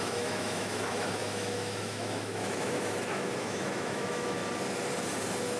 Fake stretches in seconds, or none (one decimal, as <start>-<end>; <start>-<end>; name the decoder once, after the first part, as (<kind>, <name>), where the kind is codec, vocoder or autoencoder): 0.0-4.4 (autoencoder, DAC-VAE)